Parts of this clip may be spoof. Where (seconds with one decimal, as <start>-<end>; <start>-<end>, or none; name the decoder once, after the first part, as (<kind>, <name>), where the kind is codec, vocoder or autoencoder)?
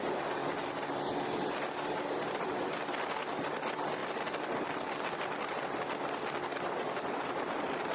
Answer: none